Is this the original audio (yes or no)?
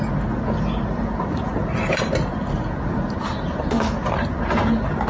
yes